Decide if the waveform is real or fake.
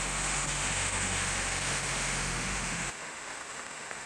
fake